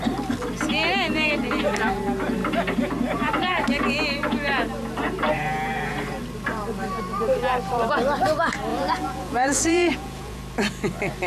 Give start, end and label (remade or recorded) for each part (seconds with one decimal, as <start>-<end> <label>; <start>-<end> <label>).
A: 0.0-8.7 recorded; 8.7-10.4 remade; 10.4-11.3 recorded